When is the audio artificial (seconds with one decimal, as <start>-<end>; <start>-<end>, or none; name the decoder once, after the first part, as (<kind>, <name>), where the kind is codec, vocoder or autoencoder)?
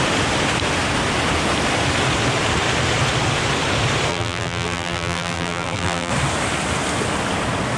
4.1-6.1 (vocoder, BigVGAN v2)